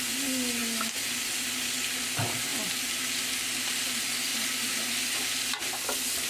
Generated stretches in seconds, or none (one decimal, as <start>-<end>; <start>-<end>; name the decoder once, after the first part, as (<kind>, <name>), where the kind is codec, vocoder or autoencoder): none